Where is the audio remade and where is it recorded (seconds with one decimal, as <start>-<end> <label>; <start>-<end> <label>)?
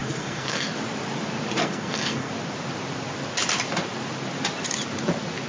0.0-0.7 remade; 0.7-1.6 recorded; 1.6-2.3 remade; 2.3-5.5 recorded